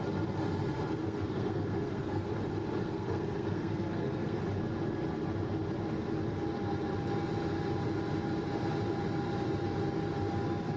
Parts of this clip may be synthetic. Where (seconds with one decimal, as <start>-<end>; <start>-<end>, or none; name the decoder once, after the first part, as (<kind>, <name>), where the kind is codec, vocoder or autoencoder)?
1.0-2.3 (codec, SNAC); 2.8-4.4